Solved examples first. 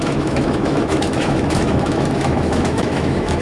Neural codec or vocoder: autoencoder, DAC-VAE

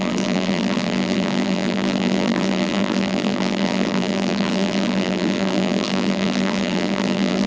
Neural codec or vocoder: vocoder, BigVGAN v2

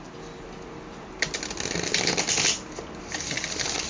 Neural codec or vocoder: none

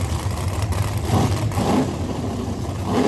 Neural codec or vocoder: vocoder, BigVGAN v2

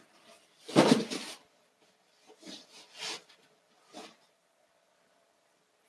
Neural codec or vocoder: vocoder, BigVGAN v2